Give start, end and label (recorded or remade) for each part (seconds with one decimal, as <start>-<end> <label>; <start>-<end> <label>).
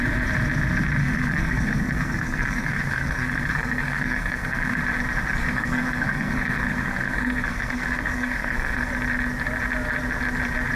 0.0-1.0 recorded; 1.0-4.8 remade; 4.8-5.4 recorded; 5.4-8.9 remade; 8.9-10.8 recorded